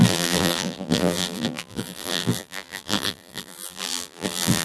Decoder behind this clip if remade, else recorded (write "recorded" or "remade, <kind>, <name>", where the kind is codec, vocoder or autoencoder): remade, vocoder, BigVGAN v2